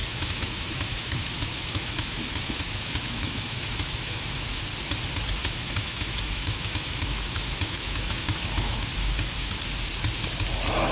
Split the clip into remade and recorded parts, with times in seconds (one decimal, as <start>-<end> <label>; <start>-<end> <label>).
0.0-4.6 remade; 4.6-5.4 recorded; 5.4-9.5 remade; 9.5-10.9 recorded